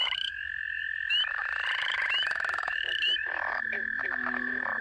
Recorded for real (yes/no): no